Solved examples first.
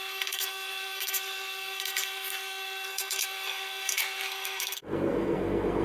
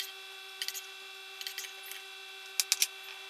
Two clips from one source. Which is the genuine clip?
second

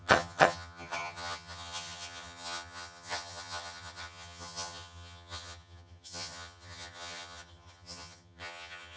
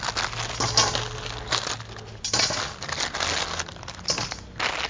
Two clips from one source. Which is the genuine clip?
second